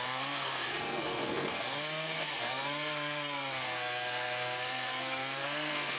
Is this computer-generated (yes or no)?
yes